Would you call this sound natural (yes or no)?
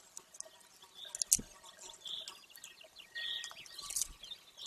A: yes